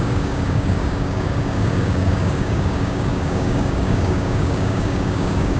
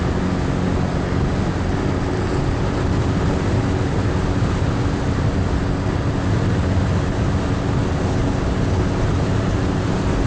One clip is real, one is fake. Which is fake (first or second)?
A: first